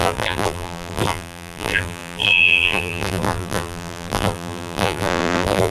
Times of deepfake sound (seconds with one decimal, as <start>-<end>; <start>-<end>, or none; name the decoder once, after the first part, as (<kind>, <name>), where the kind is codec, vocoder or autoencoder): 0.0-5.7 (vocoder, BigVGAN v2)